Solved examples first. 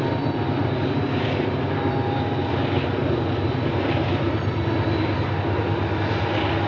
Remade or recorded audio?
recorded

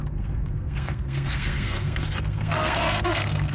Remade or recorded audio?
remade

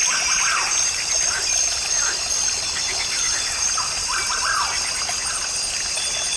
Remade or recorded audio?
recorded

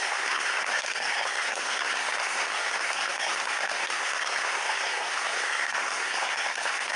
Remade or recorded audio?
remade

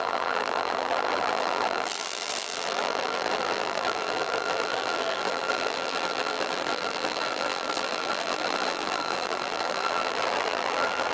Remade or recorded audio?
remade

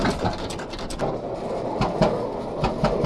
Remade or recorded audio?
recorded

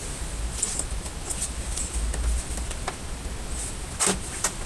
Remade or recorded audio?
recorded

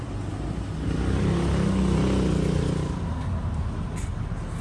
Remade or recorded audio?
recorded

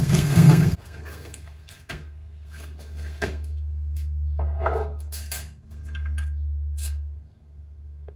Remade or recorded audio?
remade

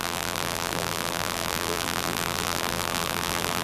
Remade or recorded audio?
remade